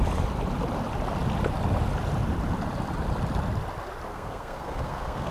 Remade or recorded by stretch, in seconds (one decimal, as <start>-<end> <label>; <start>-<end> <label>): 0.0-4.1 recorded; 4.1-5.3 remade